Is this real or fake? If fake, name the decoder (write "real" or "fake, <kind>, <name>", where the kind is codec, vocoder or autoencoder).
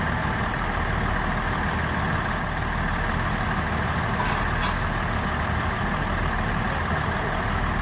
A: real